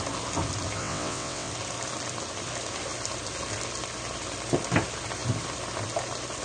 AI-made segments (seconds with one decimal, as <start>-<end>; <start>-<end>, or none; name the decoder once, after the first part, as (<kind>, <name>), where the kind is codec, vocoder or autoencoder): 0.8-1.5 (vocoder, WaveNeXt)